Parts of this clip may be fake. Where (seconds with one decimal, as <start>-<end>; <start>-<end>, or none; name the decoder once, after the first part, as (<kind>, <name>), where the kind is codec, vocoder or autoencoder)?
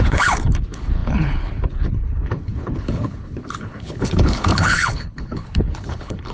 0.0-6.3 (codec, HILCodec)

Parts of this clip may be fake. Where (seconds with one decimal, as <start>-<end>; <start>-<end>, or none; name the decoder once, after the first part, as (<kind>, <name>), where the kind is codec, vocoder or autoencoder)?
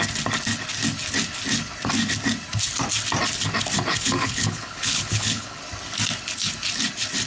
3.9-5.6 (codec, HILCodec)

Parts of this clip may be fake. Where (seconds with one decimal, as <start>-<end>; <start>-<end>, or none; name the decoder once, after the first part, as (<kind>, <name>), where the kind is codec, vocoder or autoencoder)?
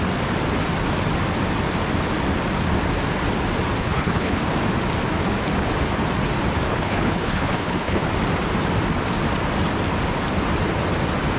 3.8-4.4 (codec, HILCodec); 6.7-8.0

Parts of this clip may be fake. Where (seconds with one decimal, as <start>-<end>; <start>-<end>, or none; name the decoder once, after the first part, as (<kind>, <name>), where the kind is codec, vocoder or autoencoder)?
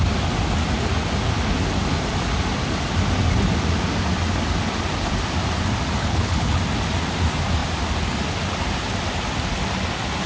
6.0-6.6 (codec, HILCodec)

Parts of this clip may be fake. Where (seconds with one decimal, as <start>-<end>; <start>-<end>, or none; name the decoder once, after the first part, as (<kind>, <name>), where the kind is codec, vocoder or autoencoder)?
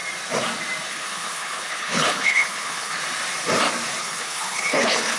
0.9-3.0 (codec, HILCodec); 4.0-5.2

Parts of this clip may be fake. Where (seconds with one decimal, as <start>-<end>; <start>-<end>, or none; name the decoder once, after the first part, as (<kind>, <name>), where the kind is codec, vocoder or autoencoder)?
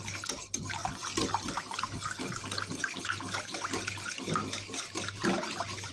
none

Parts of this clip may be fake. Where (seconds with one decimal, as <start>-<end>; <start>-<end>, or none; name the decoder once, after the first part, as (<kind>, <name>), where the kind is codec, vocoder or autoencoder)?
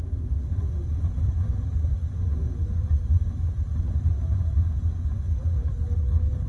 5.6-6.5 (codec, HILCodec)